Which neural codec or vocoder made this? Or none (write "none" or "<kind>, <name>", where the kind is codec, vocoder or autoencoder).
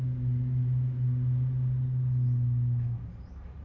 none